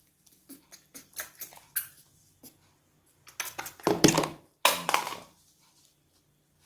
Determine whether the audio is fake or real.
real